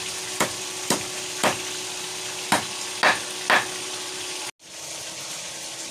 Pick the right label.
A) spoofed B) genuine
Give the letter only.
B